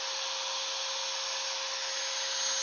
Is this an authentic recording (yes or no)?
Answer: yes